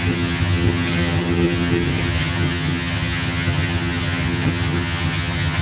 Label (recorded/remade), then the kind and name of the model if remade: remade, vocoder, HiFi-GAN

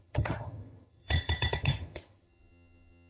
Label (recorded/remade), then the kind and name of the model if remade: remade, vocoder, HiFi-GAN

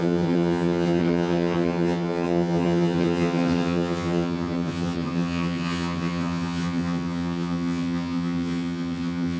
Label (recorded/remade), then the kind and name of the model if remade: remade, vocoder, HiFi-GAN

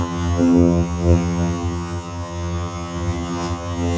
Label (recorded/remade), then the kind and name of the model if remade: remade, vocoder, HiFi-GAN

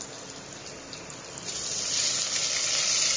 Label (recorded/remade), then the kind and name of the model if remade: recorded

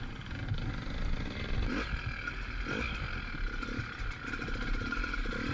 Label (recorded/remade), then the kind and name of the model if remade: recorded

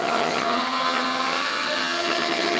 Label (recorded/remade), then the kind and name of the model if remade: remade, vocoder, HiFi-GAN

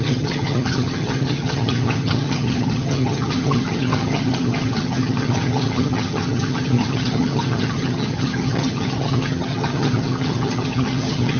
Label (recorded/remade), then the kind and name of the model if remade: remade, vocoder, HiFi-GAN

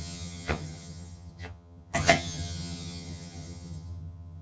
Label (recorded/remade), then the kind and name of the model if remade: remade, vocoder, HiFi-GAN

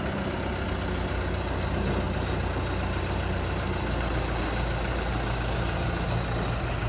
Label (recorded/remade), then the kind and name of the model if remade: recorded